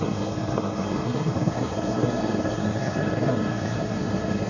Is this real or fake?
fake